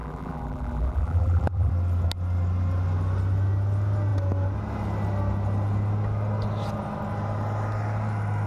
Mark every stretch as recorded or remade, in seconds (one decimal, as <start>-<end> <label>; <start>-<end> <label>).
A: 0.0-1.7 remade; 1.7-8.5 recorded